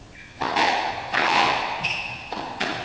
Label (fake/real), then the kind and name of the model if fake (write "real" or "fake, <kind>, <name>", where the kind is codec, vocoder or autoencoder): fake, vocoder, Vocos